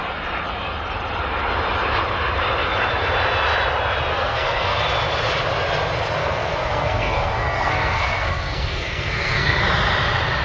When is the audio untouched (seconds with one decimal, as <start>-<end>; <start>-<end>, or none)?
0.0-4.1; 4.8-6.2; 9.6-10.4